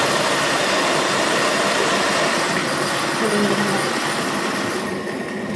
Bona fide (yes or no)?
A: yes